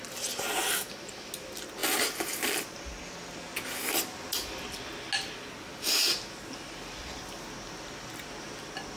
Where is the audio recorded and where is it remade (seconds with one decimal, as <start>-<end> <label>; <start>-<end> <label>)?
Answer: 0.0-9.0 recorded